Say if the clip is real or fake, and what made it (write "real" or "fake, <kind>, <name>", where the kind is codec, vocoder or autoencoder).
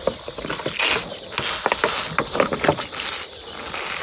real